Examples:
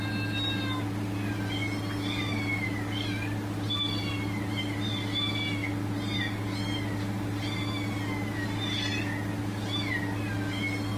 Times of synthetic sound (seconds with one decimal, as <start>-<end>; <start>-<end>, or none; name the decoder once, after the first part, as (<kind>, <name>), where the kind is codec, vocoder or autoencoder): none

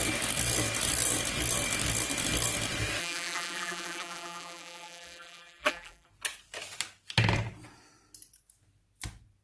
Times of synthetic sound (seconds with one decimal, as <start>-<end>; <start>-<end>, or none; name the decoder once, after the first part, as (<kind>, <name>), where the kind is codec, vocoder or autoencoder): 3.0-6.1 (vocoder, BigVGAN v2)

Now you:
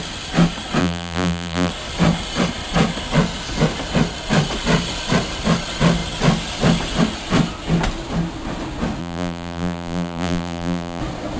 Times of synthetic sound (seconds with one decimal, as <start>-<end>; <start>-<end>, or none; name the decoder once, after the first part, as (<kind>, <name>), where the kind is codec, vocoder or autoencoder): 0.8-1.7 (vocoder, BigVGAN v2); 9.0-11.0

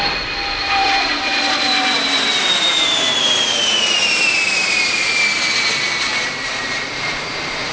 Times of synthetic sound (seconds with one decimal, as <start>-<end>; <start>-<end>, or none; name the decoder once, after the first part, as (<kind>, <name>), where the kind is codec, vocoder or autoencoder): 0.8-5.2 (vocoder, BigVGAN v2); 6.1-7.7

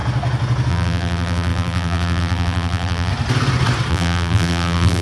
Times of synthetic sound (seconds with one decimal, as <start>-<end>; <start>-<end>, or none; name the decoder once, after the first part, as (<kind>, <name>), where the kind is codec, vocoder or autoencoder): 0.7-3.1 (vocoder, BigVGAN v2); 3.9-5.0

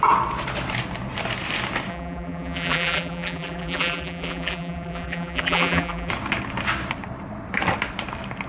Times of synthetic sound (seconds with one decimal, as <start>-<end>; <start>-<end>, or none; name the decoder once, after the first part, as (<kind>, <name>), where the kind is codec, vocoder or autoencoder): 1.9-6.1 (vocoder, BigVGAN v2)

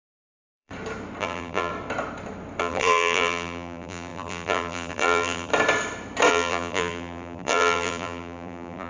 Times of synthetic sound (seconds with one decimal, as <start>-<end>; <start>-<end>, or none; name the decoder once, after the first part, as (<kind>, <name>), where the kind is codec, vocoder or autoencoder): 0.0-0.7 (vocoder, BigVGAN v2); 1.2-1.7; 2.6-5.5; 6.3-8.9

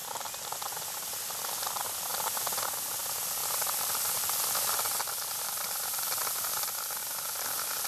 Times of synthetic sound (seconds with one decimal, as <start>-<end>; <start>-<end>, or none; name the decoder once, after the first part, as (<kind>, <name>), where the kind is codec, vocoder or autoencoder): 2.1-3.0 (vocoder, BigVGAN v2); 3.4-6.3